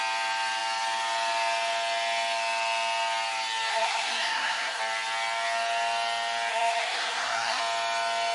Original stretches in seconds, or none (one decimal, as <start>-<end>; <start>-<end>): 0.0-3.7; 4.8-6.5; 7.6-8.3